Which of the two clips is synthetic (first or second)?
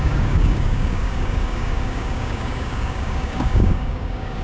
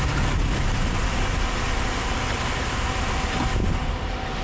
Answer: first